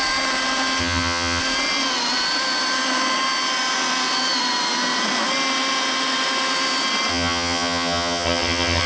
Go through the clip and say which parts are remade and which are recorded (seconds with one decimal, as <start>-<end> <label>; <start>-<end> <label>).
0.0-0.8 recorded; 0.8-1.4 remade; 1.4-7.1 recorded; 7.1-8.9 remade